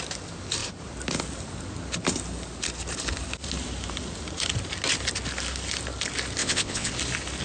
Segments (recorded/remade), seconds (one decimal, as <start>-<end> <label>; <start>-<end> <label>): 0.0-6.4 recorded; 6.4-6.9 remade; 6.9-7.4 recorded